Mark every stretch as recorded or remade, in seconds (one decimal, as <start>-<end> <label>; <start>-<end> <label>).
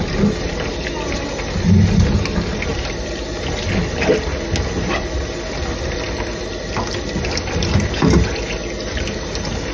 0.0-9.7 recorded